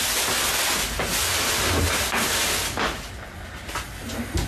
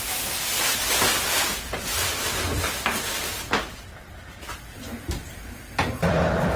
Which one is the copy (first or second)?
second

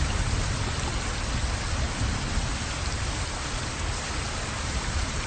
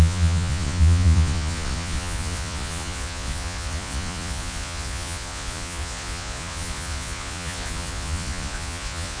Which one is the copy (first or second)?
second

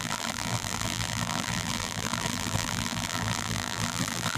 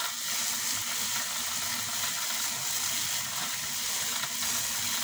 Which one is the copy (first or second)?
first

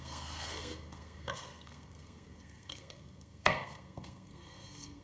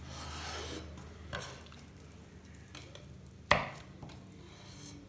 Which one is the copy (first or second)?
first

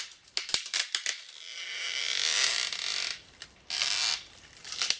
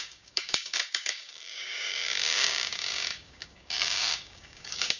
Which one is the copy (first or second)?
second